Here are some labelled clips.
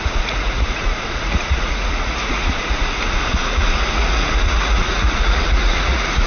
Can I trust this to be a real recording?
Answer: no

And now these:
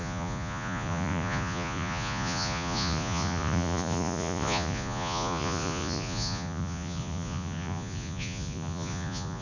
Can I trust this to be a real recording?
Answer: no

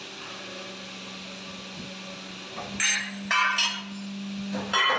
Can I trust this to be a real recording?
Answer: yes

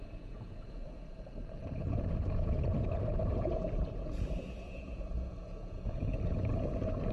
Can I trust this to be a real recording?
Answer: no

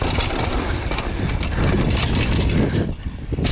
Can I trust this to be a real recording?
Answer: yes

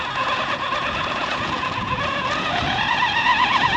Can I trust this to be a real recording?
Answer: no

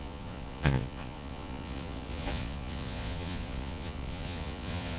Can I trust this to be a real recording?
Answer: no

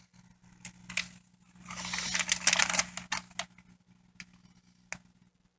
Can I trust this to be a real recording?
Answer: yes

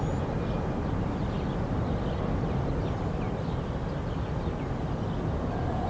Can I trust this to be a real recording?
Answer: yes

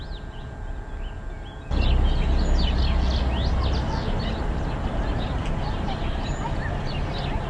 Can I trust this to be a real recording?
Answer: yes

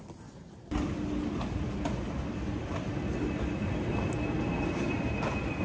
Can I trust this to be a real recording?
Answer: yes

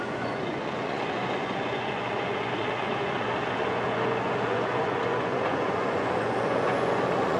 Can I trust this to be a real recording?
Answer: no